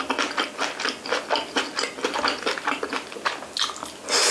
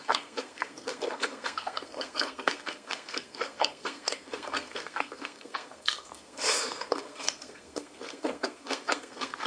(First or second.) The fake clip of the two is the second